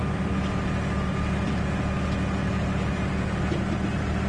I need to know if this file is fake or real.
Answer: real